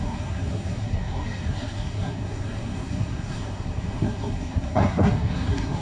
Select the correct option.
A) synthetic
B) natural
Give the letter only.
A